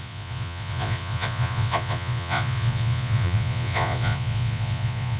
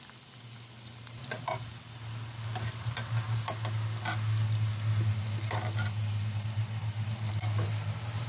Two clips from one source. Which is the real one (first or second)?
second